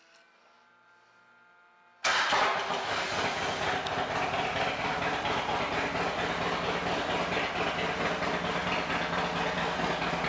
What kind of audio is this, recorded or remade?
recorded